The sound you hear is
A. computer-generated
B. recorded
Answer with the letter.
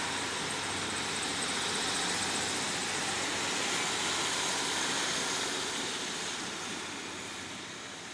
B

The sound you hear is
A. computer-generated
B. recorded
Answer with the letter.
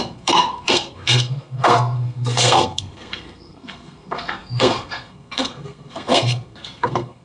A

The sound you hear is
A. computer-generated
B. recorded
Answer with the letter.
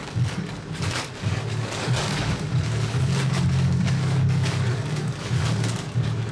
A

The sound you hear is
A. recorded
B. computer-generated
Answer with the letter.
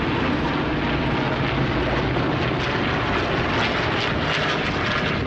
A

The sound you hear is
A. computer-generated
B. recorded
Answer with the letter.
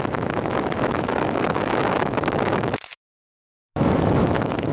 A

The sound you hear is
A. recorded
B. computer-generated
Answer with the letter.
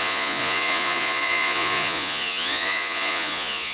B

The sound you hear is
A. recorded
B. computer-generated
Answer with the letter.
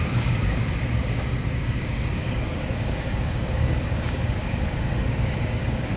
B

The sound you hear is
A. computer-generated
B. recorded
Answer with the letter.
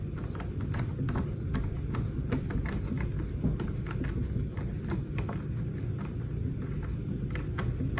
B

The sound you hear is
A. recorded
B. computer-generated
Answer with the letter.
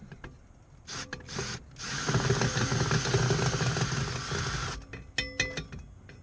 A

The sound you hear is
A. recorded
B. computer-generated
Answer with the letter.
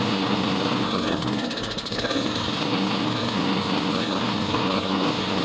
B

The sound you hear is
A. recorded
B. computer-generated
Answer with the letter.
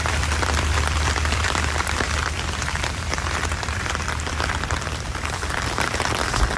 B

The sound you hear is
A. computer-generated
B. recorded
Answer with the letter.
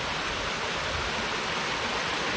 B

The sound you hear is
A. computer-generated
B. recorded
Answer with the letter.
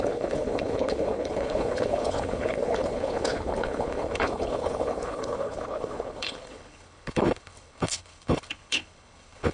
A